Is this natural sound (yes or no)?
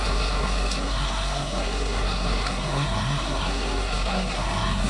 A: no